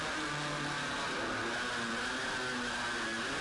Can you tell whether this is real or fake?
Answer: real